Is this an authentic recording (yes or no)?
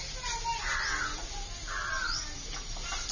yes